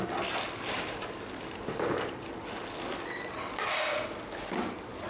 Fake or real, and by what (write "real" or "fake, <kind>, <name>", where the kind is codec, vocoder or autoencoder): real